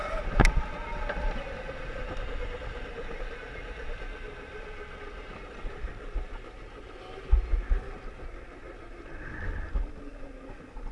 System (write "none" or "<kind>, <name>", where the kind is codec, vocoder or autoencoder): none